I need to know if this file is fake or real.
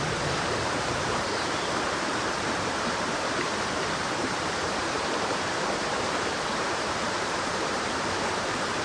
fake